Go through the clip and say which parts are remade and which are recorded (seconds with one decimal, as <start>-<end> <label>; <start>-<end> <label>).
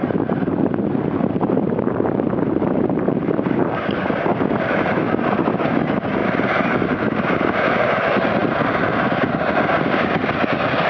0.0-0.5 recorded; 0.5-5.4 remade; 5.4-6.2 recorded; 6.2-6.8 remade; 6.8-10.9 recorded